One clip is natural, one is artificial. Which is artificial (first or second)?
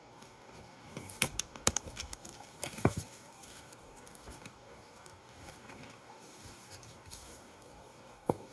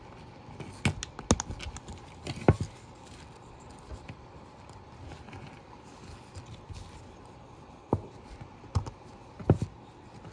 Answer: first